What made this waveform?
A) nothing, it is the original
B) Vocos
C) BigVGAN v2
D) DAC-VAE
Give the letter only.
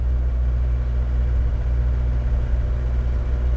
A